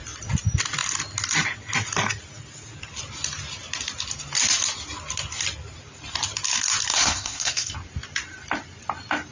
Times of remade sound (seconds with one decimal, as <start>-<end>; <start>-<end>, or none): 6.9-7.7

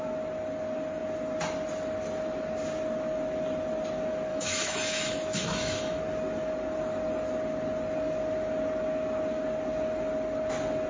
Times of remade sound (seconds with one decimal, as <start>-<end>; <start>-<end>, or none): 4.3-6.0

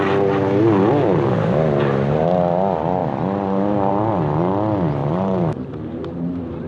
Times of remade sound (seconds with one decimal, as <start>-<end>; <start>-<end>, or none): 5.0-6.7

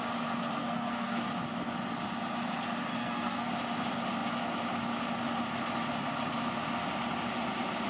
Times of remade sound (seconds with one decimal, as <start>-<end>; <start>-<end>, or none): 0.6-1.3; 2.9-3.5

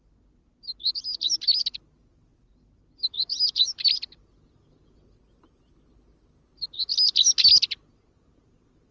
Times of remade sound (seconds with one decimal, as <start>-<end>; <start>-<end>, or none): none